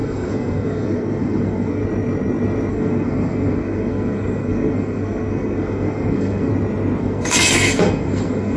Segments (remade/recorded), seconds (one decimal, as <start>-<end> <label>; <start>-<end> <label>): 0.0-1.8 remade; 1.8-2.7 recorded; 2.7-6.5 remade; 6.5-7.0 recorded; 7.0-8.6 remade